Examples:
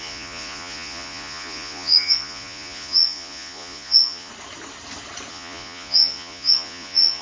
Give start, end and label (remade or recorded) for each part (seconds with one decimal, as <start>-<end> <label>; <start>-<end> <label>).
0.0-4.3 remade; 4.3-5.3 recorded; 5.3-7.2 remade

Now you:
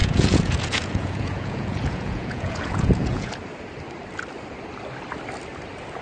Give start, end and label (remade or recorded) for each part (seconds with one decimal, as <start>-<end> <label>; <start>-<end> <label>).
0.0-3.3 remade; 3.3-6.0 recorded

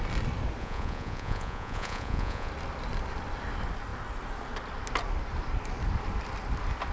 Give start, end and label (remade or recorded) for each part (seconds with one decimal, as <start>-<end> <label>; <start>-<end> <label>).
0.0-0.6 recorded; 0.6-2.5 remade; 2.5-6.9 recorded

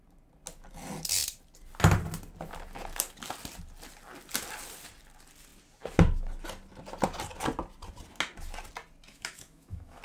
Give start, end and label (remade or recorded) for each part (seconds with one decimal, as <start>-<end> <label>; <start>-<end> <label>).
0.0-9.1 recorded; 9.1-10.0 remade